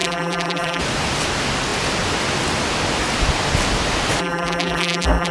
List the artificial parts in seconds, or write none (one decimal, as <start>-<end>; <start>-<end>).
0.0-0.8; 4.2-5.3